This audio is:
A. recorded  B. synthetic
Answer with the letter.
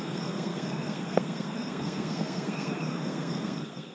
B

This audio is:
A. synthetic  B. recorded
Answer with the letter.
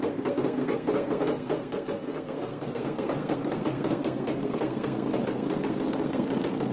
A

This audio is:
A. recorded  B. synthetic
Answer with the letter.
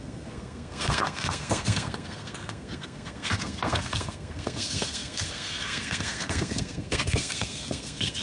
B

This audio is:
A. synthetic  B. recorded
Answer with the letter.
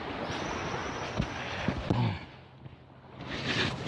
B